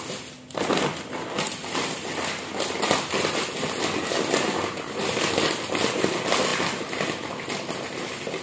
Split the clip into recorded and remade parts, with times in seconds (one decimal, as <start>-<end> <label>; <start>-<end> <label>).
0.0-0.9 recorded; 0.9-1.8 remade; 1.8-8.4 recorded